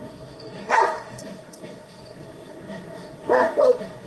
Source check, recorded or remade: remade